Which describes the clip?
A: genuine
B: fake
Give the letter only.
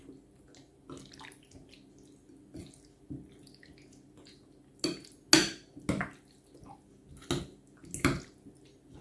A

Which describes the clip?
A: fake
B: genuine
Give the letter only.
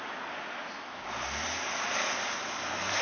B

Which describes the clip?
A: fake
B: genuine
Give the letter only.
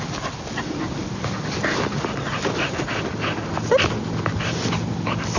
B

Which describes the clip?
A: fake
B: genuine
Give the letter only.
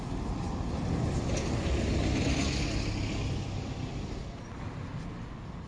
B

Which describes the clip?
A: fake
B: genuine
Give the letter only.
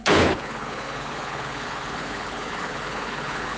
A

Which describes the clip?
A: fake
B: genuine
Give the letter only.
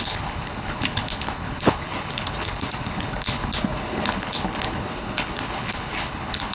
A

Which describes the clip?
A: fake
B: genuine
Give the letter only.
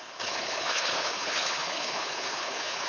A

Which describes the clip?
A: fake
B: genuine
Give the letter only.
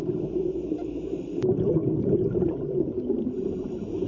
B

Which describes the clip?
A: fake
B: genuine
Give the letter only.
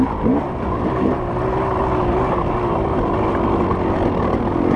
B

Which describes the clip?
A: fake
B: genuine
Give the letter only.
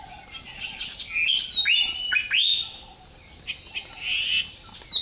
B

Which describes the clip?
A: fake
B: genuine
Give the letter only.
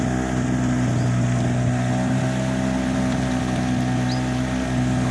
B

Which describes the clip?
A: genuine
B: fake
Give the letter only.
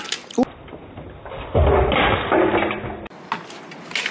A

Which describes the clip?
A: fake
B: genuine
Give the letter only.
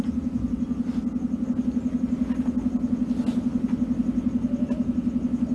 B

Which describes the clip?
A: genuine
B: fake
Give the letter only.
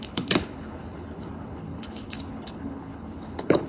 B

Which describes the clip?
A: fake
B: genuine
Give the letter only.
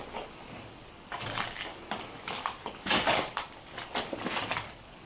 B